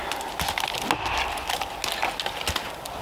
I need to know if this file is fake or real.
real